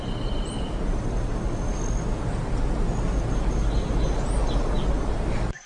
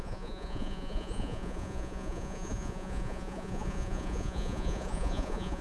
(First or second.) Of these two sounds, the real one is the first